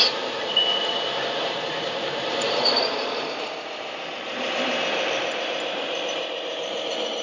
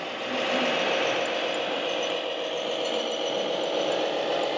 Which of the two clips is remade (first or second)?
first